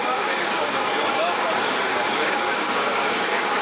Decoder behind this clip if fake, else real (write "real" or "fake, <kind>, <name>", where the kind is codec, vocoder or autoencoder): fake, codec, DAC